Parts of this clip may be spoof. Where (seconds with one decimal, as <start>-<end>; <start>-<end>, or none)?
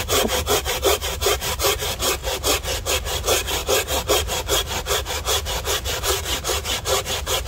0.0-2.2; 3.1-3.6; 6.0-7.5